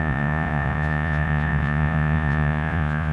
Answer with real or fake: fake